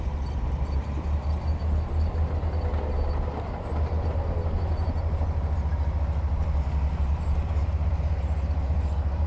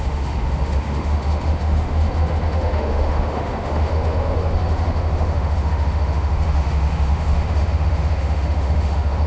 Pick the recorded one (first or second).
first